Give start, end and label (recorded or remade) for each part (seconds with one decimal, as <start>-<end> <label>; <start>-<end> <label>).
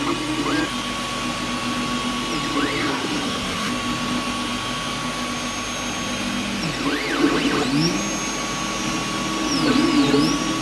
0.0-2.8 recorded; 2.8-3.7 remade; 3.7-10.6 recorded